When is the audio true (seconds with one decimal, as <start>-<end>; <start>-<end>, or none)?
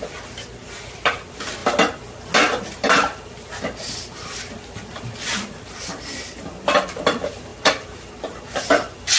0.0-7.5; 8.1-9.2